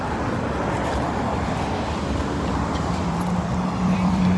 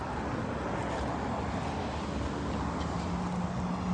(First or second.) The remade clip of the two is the first